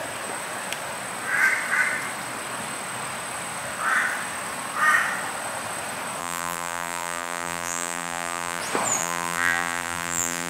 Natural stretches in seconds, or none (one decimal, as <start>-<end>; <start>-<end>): 0.0-6.2; 8.6-9.0